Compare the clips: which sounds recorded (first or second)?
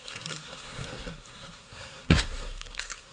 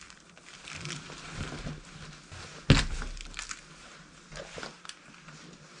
second